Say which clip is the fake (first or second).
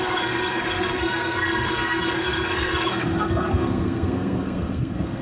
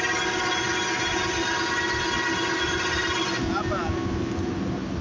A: first